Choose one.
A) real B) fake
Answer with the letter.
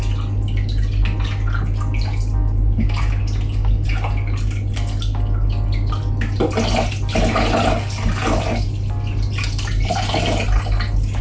A